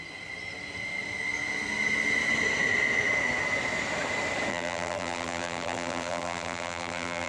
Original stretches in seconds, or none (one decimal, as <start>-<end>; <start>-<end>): 0.0-4.5